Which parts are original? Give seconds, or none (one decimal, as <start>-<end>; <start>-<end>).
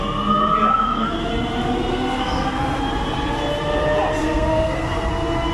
0.0-0.7; 1.3-1.9; 2.8-4.2; 5.1-5.5